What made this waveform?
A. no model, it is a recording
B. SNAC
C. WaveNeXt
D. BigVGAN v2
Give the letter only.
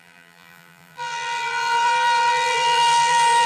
D